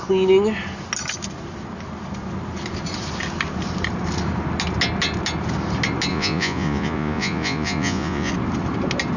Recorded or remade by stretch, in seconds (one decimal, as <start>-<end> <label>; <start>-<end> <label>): 0.0-6.1 recorded; 6.1-8.3 remade; 8.3-9.2 recorded